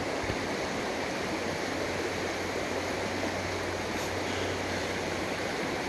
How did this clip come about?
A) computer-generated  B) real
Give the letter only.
B